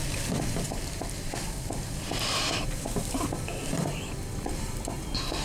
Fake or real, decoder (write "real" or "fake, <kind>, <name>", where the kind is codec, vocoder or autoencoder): fake, vocoder, BigVGAN v2